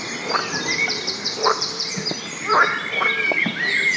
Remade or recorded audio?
remade